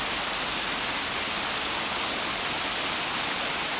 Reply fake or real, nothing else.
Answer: real